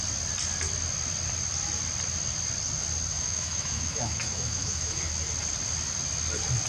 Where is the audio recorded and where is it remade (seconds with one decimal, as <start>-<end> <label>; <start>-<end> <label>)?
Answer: 0.0-3.1 recorded; 3.1-5.0 remade; 5.0-6.7 recorded